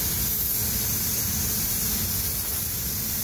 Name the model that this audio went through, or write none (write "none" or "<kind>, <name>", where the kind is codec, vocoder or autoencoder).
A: none